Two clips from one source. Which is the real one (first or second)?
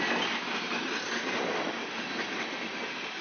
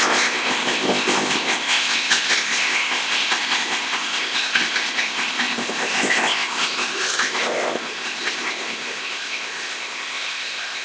first